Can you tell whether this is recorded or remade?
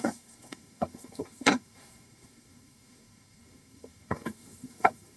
remade